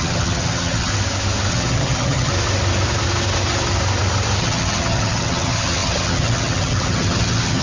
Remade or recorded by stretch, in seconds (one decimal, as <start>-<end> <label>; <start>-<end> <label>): 0.0-0.9 remade; 0.9-1.5 recorded; 1.5-2.3 remade; 2.3-4.4 recorded; 4.4-7.6 remade